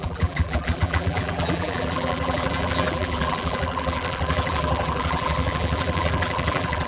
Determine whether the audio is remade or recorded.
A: remade